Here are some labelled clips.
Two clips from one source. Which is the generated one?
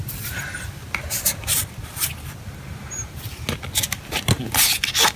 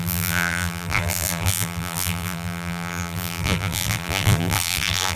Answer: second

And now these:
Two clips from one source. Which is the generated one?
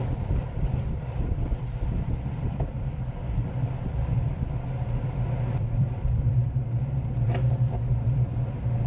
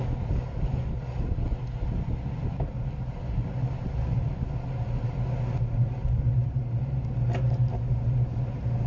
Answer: first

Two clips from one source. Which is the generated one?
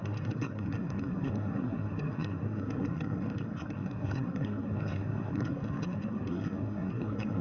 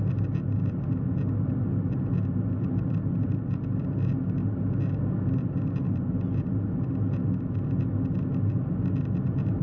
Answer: first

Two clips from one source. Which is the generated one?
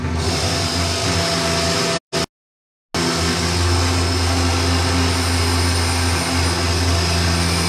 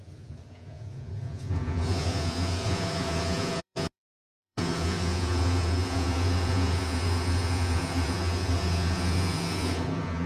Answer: second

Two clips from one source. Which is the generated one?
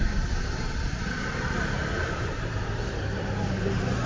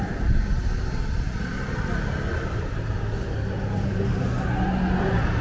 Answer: first